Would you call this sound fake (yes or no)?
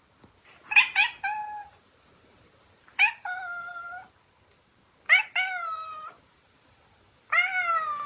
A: no